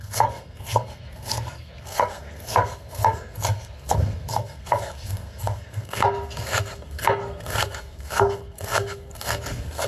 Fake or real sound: fake